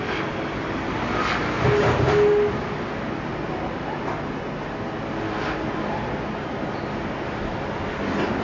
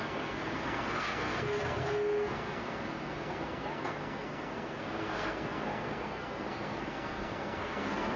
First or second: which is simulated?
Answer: second